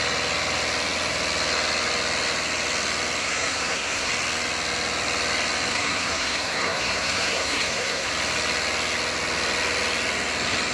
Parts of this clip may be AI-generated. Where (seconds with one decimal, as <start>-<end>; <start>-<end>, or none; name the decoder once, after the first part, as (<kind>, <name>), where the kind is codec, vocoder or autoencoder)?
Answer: 3.2-4.1 (codec, SNAC); 5.7-8.1